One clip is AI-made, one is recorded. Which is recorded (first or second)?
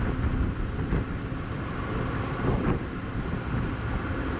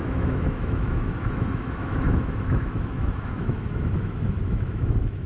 first